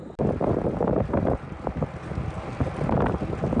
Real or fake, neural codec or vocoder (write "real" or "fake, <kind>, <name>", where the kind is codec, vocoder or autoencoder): real